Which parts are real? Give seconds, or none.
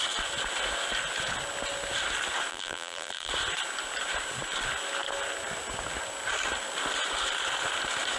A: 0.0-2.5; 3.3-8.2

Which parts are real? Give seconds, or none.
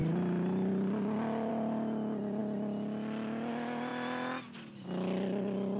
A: 0.0-5.8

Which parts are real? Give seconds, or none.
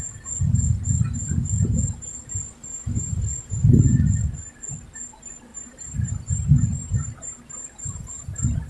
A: 0.0-2.6; 3.2-5.5; 6.1-7.6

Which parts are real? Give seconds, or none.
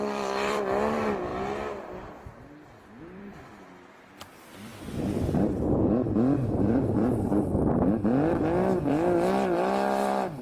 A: 1.3-3.0; 4.7-5.8; 7.3-8.9